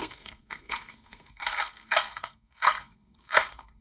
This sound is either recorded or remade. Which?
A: remade